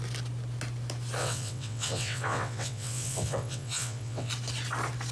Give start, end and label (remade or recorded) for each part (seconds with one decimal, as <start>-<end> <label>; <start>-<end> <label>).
0.0-1.2 recorded; 1.2-4.3 remade; 4.3-5.1 recorded